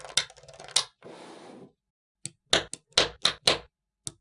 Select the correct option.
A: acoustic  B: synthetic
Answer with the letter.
A